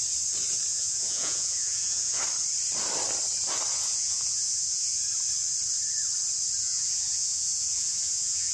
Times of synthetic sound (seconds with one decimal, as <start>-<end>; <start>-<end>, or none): 0.7-2.2; 3.7-5.0; 6.6-8.5